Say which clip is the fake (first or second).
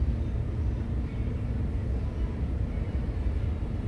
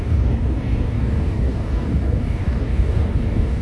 second